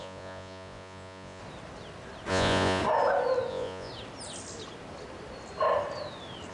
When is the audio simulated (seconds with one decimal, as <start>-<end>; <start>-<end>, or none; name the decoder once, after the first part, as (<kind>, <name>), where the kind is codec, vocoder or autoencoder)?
0.0-1.4 (vocoder, Vocos); 2.3-2.8; 3.5-3.9